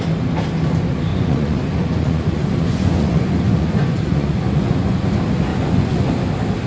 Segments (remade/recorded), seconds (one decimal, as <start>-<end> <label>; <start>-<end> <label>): 0.0-1.1 recorded; 1.1-5.1 remade; 5.1-5.5 recorded; 5.5-6.1 remade; 6.1-6.7 recorded